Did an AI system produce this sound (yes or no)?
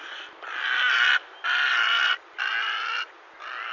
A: no